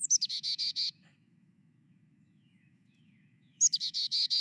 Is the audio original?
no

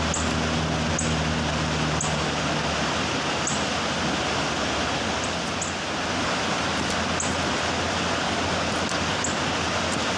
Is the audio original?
yes